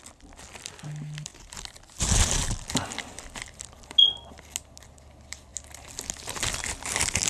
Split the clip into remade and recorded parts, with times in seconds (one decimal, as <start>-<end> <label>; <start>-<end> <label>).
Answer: 0.0-7.3 recorded